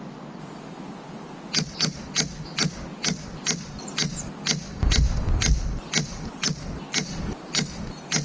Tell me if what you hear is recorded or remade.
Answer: recorded